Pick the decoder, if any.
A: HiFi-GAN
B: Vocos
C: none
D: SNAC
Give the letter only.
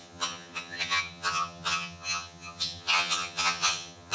A